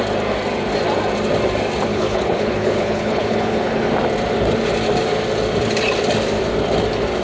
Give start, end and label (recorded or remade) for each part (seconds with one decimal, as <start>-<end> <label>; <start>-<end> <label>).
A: 0.0-1.9 recorded; 1.9-3.9 remade; 3.9-7.2 recorded